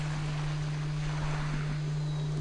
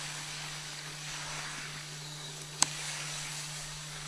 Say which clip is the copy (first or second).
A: second